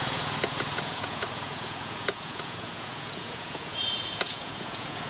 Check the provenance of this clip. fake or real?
fake